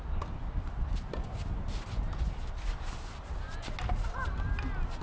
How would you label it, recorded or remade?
recorded